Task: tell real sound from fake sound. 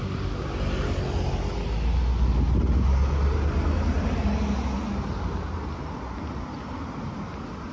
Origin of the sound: real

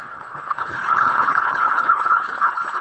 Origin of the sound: fake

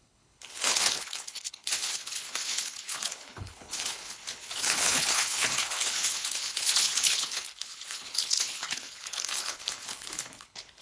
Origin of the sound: fake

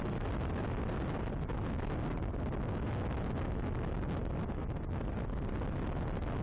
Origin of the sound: real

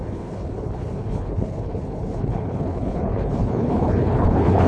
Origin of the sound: fake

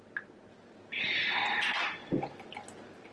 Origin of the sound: real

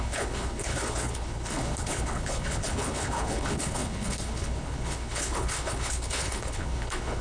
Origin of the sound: fake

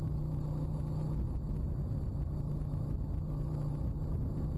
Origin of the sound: real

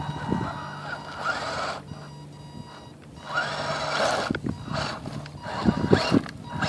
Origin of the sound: real